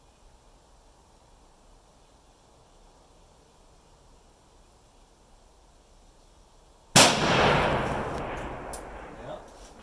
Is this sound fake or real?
real